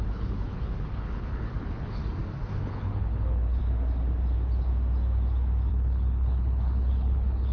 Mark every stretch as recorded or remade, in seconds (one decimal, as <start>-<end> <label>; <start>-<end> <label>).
0.0-2.0 remade; 2.0-2.5 recorded; 2.5-3.6 remade; 3.6-5.7 recorded; 5.7-7.5 remade